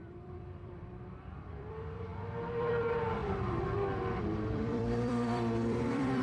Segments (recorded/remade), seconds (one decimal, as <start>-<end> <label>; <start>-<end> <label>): 0.0-2.1 remade; 2.1-2.7 recorded; 2.7-3.2 remade; 3.2-4.2 recorded; 4.2-6.2 remade